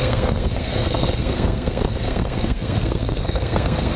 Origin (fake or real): fake